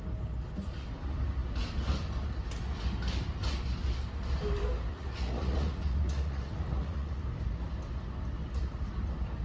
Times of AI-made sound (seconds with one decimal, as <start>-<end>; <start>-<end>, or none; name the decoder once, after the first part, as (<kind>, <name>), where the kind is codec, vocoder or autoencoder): 4.9-7.2 (vocoder, Vocos)